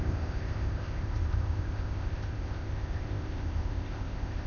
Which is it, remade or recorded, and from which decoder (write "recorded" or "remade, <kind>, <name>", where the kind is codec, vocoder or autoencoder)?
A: remade, codec, ZipCodec